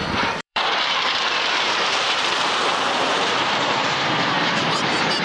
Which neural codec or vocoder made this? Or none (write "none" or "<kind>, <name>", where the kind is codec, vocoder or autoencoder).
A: vocoder, BigVGAN v2